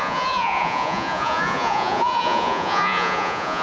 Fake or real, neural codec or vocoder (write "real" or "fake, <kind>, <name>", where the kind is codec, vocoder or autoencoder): fake, vocoder, Vocos